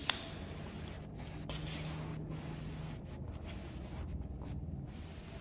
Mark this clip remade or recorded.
recorded